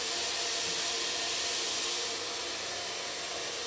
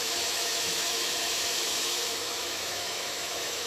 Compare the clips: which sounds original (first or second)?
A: first